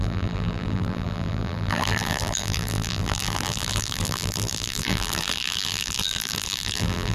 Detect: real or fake fake